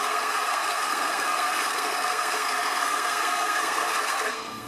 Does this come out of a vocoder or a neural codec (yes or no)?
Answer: yes